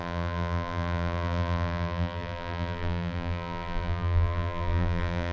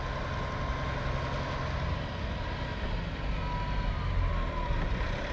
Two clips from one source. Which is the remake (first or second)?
first